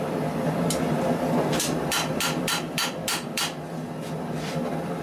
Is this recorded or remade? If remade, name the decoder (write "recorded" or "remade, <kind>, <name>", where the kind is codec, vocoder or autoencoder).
remade, vocoder, BigVGAN v2